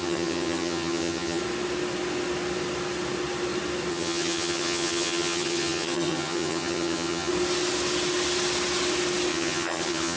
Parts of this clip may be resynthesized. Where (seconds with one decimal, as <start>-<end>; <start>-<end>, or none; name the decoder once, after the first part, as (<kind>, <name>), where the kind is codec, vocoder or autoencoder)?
0.0-1.4 (vocoder, HiFi-GAN); 3.9-7.3; 9.3-10.2